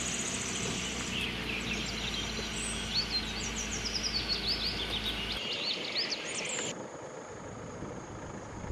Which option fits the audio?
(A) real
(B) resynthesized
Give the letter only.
A